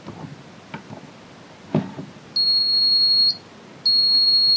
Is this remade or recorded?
recorded